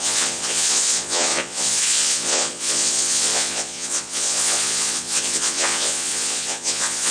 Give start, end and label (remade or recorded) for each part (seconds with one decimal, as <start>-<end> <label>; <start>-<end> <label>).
0.0-7.1 remade